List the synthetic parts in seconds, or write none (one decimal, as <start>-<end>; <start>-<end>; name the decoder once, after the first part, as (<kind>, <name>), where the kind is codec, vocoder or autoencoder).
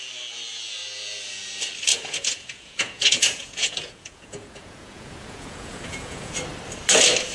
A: 1.9-6.3 (vocoder, Vocos)